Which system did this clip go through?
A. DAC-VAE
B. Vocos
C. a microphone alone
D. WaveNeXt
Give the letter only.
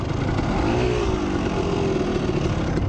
C